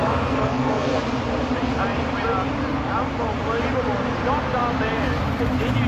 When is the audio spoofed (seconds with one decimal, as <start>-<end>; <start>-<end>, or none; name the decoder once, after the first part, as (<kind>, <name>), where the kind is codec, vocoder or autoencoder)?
0.0-1.0 (codec, SNAC)